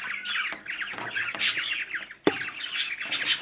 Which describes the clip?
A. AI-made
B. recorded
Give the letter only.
B